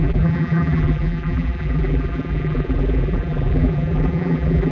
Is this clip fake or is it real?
fake